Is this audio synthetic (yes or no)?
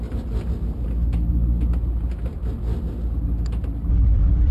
no